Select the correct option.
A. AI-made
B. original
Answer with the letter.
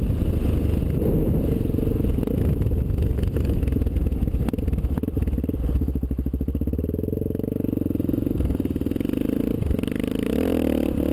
B